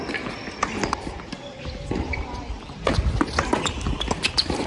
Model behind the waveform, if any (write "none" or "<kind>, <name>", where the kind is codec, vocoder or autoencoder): none